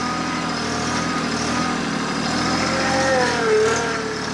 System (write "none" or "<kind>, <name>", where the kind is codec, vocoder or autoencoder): none